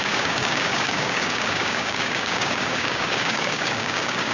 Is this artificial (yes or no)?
yes